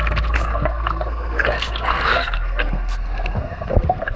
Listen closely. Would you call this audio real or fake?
fake